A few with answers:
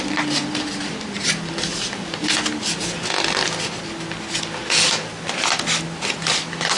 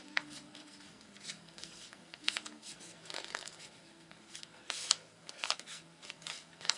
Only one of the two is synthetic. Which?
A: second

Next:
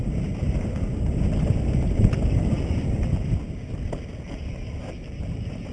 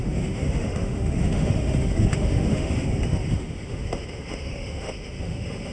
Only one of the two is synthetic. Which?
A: second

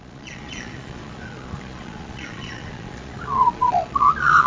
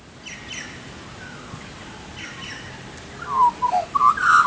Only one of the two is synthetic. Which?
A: first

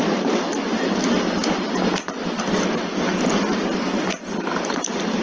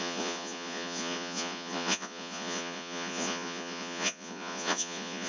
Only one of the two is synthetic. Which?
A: second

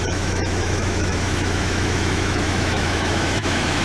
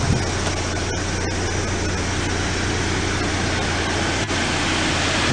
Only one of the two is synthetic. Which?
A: first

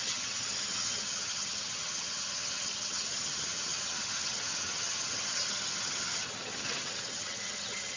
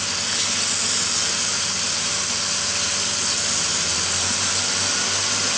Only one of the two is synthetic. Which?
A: first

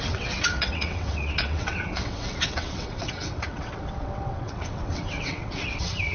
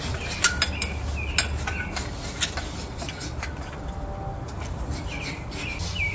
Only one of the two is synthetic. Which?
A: first